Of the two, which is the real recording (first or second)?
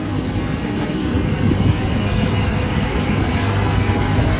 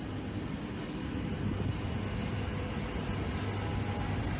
second